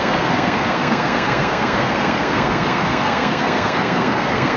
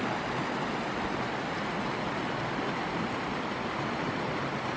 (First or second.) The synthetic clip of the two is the first